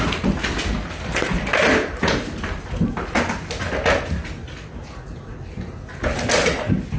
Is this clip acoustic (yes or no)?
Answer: yes